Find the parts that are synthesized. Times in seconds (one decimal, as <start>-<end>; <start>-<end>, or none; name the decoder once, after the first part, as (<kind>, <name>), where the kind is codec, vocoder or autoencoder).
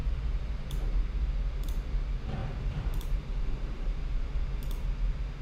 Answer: 0.0-0.9 (vocoder, BigVGAN v2); 2.4-4.0